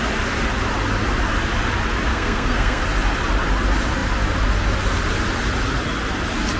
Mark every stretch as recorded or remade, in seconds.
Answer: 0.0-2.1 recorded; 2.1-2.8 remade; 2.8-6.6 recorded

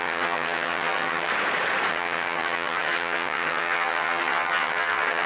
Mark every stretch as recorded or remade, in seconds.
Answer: 0.0-1.3 remade; 1.3-1.9 recorded; 1.9-5.3 remade

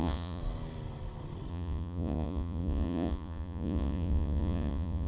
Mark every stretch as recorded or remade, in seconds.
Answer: 0.0-0.4 remade; 0.4-1.5 recorded; 1.5-5.1 remade

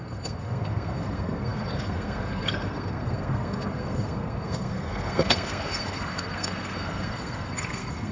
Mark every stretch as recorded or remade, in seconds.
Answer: 0.0-8.1 remade

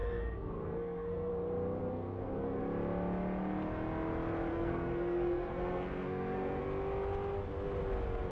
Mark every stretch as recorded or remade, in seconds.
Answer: 0.0-1.3 remade; 1.3-1.8 recorded; 1.8-2.6 remade; 2.6-4.5 recorded; 4.5-6.6 remade; 6.6-8.3 recorded

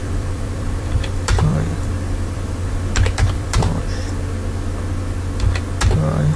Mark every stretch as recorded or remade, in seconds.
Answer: 0.0-3.8 remade; 3.8-6.4 recorded